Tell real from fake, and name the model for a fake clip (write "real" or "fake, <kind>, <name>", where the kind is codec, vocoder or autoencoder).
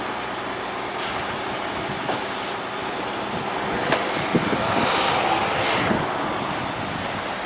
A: real